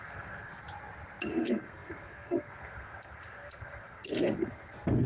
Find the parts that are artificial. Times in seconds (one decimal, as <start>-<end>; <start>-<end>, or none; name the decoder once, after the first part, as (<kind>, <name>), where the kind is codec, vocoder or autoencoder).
0.0-0.6 (codec, SNAC); 1.3-5.1